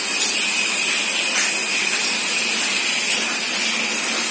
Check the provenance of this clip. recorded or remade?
recorded